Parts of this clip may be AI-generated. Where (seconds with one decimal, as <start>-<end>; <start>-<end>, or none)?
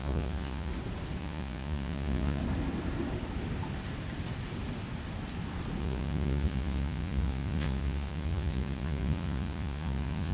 0.0-0.7; 1.2-2.4; 5.8-10.3